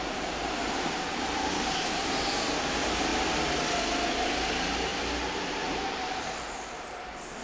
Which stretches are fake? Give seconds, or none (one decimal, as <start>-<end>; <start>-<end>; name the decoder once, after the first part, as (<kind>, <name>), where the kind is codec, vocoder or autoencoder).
0.0-3.1 (vocoder, BigVGAN v2); 4.5-4.9; 5.5-7.4